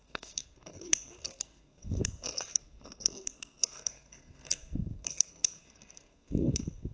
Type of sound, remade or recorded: remade